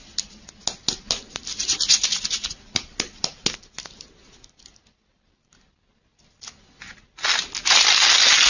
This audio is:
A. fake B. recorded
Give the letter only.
B